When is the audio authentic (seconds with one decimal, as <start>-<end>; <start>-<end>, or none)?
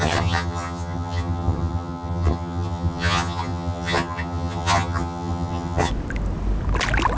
5.9-7.2